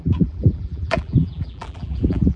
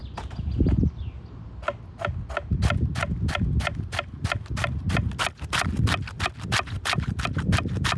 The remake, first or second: first